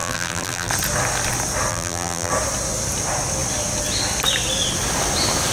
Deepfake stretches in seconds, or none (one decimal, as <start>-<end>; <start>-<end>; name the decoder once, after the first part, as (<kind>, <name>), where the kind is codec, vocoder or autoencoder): 0.0-0.7 (vocoder, BigVGAN v2); 1.7-2.3